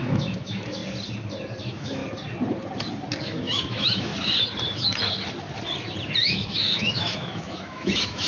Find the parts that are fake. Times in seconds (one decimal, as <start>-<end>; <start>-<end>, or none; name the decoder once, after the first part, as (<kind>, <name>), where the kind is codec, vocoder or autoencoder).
0.0-0.8 (autoencoder, DAC-VAE); 1.6-2.0; 3.2-4.1; 6.2-8.3